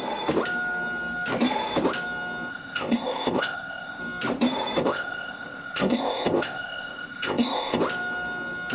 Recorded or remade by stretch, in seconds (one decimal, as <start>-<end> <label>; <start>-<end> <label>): 0.0-2.5 recorded; 2.5-4.0 remade; 4.0-4.8 recorded; 4.8-7.8 remade; 7.8-8.7 recorded